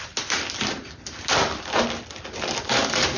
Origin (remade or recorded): recorded